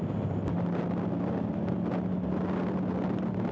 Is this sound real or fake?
real